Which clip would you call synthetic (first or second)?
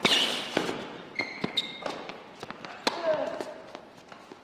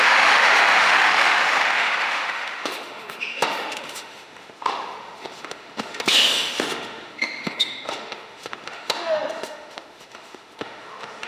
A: second